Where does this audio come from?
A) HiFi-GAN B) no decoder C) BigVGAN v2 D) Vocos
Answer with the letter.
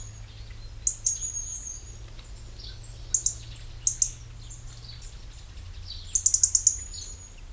B